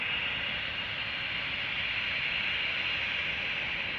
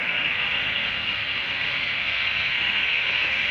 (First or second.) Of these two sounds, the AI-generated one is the second